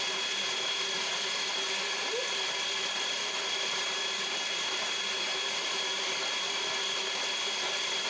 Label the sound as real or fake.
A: fake